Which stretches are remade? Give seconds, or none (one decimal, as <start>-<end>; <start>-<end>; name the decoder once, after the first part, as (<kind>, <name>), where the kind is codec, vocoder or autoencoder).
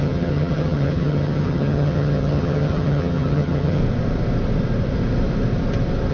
0.0-3.8 (vocoder, HiFi-GAN)